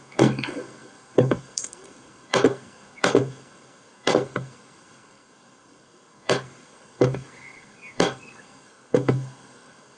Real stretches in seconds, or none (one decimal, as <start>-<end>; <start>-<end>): none